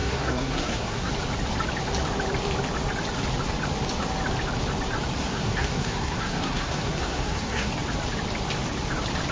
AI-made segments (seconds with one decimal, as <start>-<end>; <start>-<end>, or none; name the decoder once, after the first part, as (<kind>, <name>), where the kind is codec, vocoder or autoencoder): 0.0-1.1 (codec, SNAC); 5.2-7.7